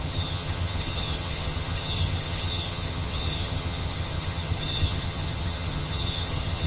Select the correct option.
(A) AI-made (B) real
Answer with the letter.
A